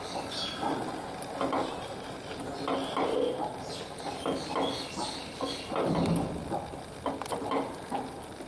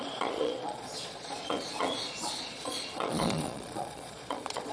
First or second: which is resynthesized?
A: second